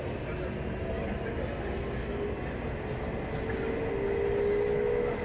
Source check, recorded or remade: recorded